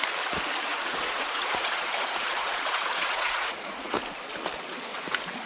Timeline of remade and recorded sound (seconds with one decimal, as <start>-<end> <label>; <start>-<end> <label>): 0.0-0.7 recorded; 0.7-4.0 remade; 4.0-4.9 recorded; 4.9-5.5 remade